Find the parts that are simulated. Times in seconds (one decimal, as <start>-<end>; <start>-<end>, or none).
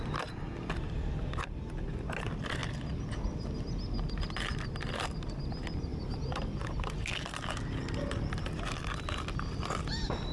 5.9-7.0